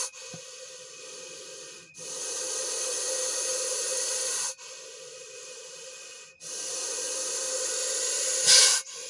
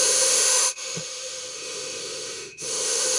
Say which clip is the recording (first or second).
first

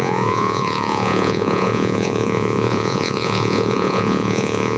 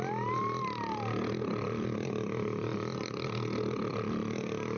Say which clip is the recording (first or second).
second